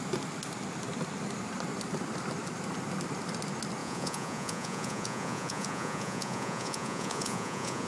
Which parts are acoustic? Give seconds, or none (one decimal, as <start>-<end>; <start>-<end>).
0.0-3.8